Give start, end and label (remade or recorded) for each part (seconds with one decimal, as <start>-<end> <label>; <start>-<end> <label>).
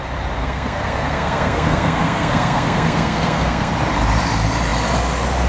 0.0-0.4 recorded; 0.4-3.7 remade; 3.7-5.5 recorded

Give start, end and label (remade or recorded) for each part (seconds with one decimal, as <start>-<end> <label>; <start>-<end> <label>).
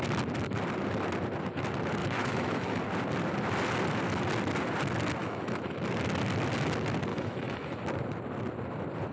0.0-2.0 recorded; 2.0-2.8 remade; 2.8-5.2 recorded; 5.2-5.8 remade; 5.8-7.1 recorded; 7.1-7.8 remade; 7.8-9.1 recorded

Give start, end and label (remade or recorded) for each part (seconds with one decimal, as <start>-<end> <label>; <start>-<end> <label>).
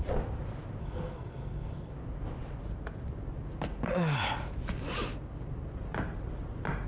0.0-0.8 recorded; 0.8-1.9 remade; 1.9-6.9 recorded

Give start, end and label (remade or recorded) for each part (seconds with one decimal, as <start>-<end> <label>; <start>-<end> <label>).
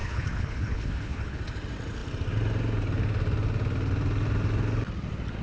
0.0-1.4 remade; 1.4-5.4 recorded